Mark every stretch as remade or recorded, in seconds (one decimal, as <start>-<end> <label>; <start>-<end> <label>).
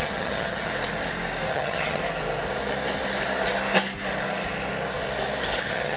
0.0-0.7 remade; 0.7-1.5 recorded; 1.5-2.0 remade; 2.0-5.6 recorded; 5.6-6.0 remade